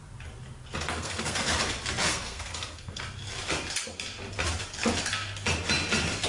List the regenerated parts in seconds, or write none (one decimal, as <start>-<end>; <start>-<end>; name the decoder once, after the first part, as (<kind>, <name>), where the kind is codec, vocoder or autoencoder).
0.9-1.6 (codec, SNAC); 2.1-3.0